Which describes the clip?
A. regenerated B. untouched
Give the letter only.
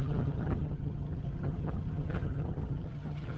A